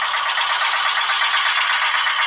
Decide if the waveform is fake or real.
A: real